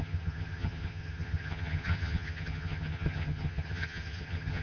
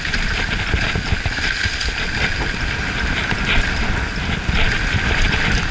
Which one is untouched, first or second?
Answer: second